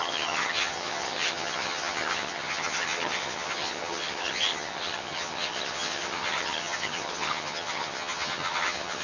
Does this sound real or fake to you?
fake